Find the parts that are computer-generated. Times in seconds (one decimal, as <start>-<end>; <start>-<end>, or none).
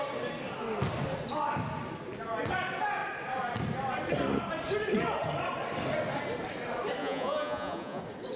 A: 7.0-8.0